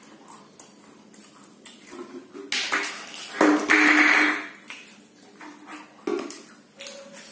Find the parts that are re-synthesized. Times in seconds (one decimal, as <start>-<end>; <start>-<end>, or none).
none